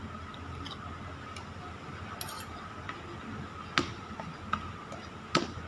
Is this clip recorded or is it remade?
recorded